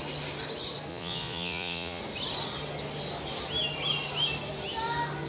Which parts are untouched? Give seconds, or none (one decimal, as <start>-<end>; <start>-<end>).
0.0-0.9; 2.0-5.3